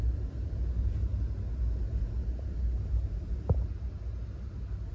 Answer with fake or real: real